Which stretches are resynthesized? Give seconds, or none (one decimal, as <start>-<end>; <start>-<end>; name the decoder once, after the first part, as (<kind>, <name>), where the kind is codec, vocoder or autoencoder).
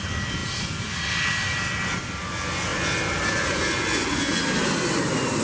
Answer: none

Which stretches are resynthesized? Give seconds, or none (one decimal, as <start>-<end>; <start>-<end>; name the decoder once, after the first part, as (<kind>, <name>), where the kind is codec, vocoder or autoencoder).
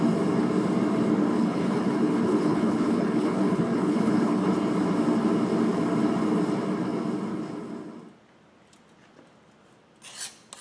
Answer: 1.4-4.5 (codec, HILCodec)